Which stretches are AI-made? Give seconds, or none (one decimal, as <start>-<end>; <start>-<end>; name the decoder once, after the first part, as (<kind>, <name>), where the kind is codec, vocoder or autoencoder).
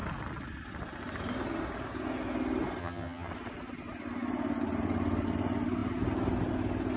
2.8-3.3 (vocoder, HiFi-GAN)